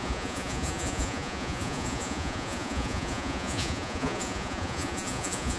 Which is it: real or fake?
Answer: fake